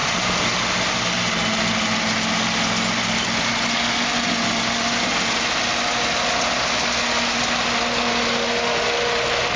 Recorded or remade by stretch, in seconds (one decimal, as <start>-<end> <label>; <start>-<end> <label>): 0.0-9.6 recorded